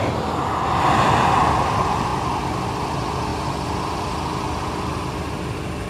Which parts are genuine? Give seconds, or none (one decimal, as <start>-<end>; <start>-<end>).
0.0-5.9